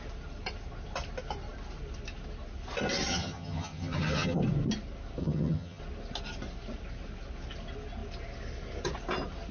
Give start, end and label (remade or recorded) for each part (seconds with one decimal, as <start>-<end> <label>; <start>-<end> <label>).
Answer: 0.0-3.1 recorded; 3.1-4.4 remade; 4.4-5.2 recorded; 5.2-5.8 remade; 5.8-9.5 recorded